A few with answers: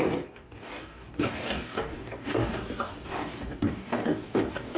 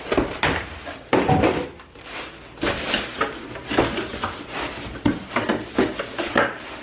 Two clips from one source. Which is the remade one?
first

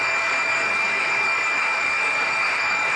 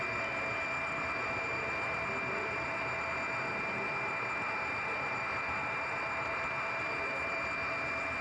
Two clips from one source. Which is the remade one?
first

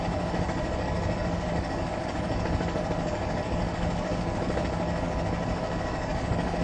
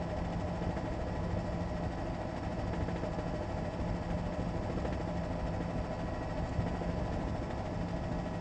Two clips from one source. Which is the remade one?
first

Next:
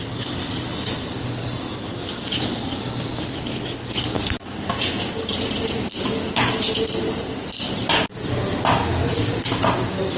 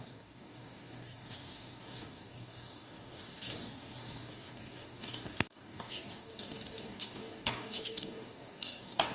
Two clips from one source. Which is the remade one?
second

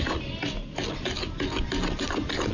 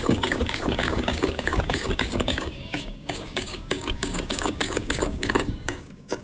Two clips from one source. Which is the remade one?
second